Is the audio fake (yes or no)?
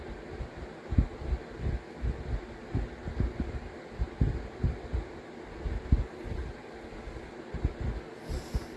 no